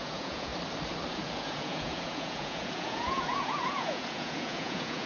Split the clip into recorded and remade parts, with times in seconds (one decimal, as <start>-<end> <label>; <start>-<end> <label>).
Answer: 0.0-0.5 remade; 0.5-1.1 recorded; 1.1-5.1 remade